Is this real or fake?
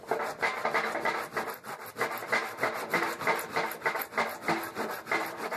fake